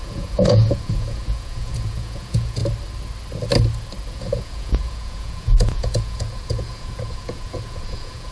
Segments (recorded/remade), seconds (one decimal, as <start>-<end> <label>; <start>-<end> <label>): 0.0-2.6 remade; 2.6-4.1 recorded; 4.1-8.3 remade